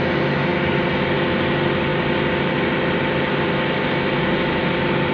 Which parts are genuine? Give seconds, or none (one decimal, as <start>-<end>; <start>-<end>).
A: 0.0-5.1